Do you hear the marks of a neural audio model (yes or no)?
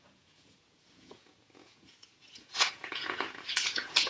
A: yes